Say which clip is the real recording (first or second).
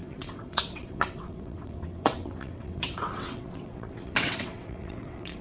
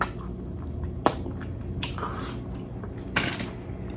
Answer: second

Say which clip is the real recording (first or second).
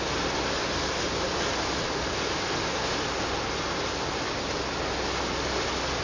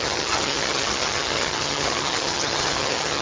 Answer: first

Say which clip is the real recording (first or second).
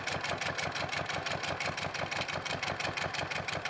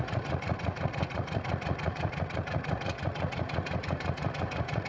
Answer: first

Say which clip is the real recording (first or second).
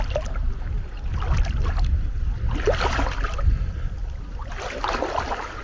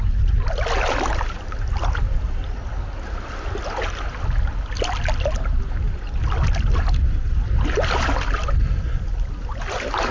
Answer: second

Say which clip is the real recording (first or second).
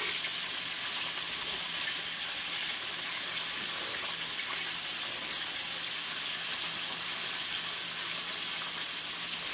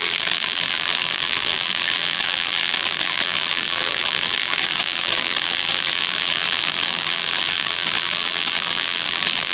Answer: first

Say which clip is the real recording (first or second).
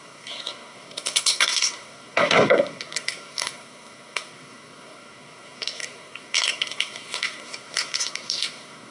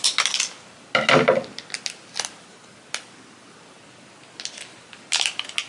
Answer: second